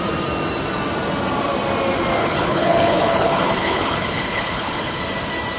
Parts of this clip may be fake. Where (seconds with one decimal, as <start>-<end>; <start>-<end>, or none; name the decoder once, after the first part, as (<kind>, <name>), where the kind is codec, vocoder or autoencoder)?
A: 2.2-5.0 (codec, HILCodec)